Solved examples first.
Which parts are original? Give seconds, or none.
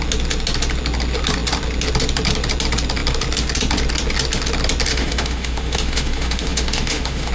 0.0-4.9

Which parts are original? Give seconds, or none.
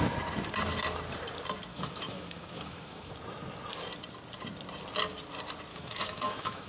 0.0-1.7; 3.1-5.7